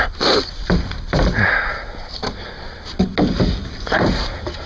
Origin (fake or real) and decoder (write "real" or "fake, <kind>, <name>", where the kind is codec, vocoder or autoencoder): real